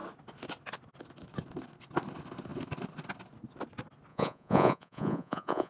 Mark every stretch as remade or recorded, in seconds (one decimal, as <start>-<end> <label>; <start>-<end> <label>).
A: 0.0-4.1 recorded; 4.1-5.7 remade